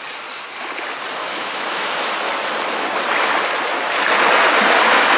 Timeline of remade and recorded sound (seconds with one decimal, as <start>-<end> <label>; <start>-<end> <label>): 0.0-1.2 recorded; 1.2-2.2 remade; 2.2-5.2 recorded